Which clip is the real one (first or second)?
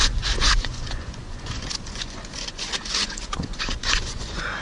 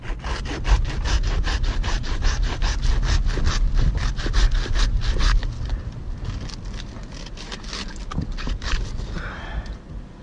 second